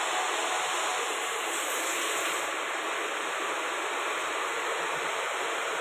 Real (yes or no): yes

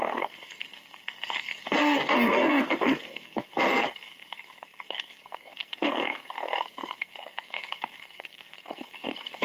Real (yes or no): no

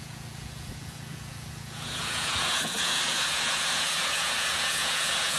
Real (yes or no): no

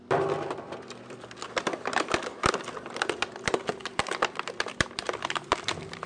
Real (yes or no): no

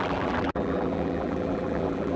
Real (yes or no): no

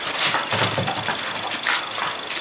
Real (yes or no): yes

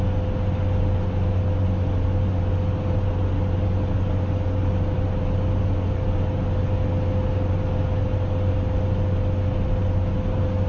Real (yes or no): yes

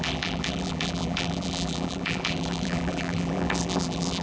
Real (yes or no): no